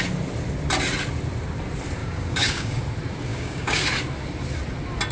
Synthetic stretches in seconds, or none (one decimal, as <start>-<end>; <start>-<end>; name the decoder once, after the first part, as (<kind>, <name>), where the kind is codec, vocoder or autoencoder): 2.0-2.8 (codec, DAC); 3.3-3.9